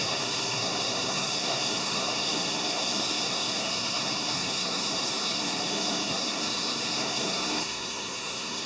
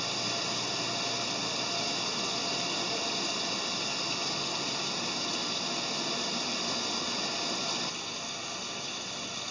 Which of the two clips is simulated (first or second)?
first